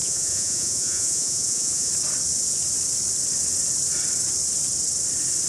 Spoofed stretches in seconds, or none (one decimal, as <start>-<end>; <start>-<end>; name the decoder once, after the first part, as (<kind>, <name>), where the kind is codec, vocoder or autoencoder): 0.0-1.9 (vocoder, Vocos)